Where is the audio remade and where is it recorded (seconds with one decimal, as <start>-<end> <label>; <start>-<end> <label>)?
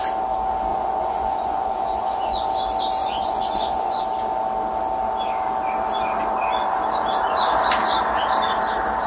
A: 0.0-0.7 recorded; 0.7-2.5 remade; 2.5-3.0 recorded; 3.0-4.0 remade; 4.0-9.1 recorded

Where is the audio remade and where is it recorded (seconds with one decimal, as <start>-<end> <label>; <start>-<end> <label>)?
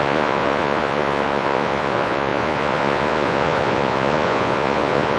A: 0.0-5.2 remade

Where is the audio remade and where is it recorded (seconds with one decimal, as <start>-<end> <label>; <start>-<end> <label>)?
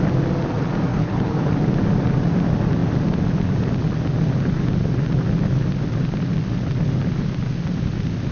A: 0.0-0.9 recorded; 0.9-1.5 remade; 1.5-8.3 recorded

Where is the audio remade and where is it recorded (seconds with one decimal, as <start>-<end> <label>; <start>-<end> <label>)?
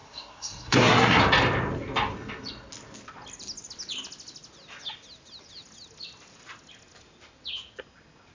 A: 0.0-1.2 remade; 1.2-8.3 recorded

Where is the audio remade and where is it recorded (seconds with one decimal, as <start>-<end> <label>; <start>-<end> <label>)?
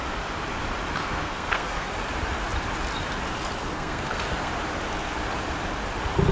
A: 0.0-1.0 recorded; 1.0-1.9 remade; 1.9-3.6 recorded; 3.6-4.5 remade; 4.5-6.3 recorded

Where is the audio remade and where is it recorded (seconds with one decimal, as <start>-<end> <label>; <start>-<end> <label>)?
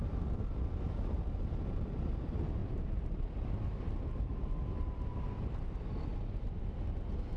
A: 0.0-2.6 recorded; 2.6-5.2 remade; 5.2-6.1 recorded; 6.1-6.6 remade; 6.6-7.4 recorded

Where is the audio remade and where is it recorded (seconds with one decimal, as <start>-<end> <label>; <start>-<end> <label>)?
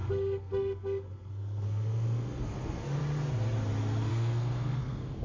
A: 0.0-3.0 remade; 3.0-4.1 recorded; 4.1-5.2 remade